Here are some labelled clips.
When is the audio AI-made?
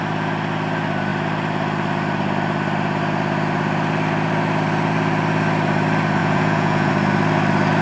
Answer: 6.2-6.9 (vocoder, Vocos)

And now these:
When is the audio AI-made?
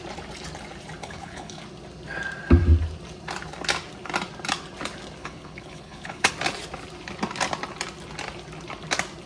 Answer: 1.0-1.6 (codec, HILCodec); 5.2-6.3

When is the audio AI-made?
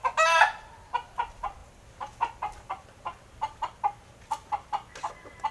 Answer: none